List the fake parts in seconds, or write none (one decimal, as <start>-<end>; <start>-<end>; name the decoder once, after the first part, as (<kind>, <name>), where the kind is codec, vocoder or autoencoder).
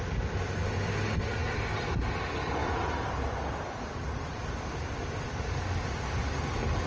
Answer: 2.6-5.8 (vocoder, BigVGAN v2)